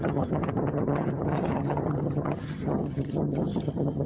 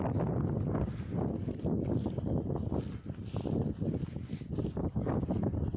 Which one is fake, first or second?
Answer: first